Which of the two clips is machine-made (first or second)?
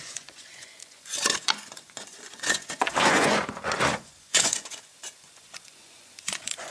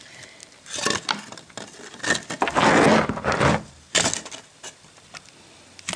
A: first